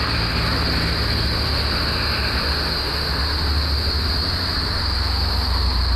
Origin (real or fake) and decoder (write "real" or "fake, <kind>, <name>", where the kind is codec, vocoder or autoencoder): real